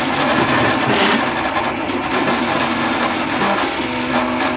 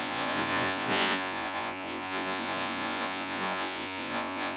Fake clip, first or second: second